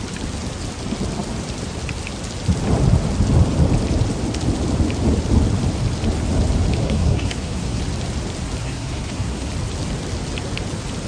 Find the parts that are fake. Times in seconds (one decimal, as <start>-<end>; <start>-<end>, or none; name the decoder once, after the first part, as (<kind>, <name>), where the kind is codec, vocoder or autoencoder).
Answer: 6.8-7.8 (codec, SNAC); 8.6-9.5